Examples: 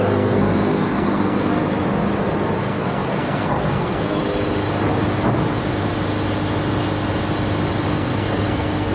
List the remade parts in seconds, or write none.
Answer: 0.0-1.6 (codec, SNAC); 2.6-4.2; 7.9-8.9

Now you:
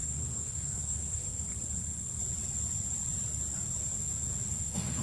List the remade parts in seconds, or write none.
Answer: 0.0-1.5 (codec, SNAC); 4.5-5.0

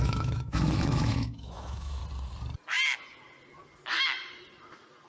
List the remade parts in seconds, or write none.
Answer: 0.0-2.0 (autoencoder, DAC-VAE)